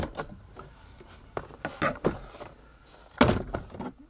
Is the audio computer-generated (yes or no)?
no